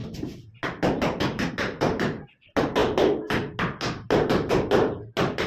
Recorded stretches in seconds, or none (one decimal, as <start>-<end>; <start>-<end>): 0.0-5.5